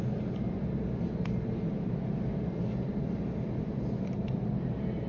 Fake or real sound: real